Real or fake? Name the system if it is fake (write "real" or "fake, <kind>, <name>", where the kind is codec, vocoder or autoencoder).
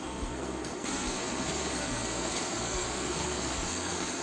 fake, codec, SNAC